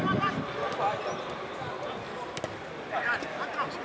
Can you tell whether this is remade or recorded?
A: recorded